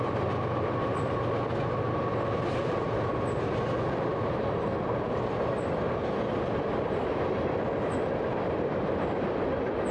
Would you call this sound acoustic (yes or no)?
yes